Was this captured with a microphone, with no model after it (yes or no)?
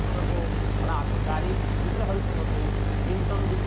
yes